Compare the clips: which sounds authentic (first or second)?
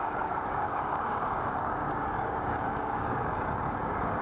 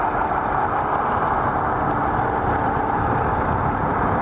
second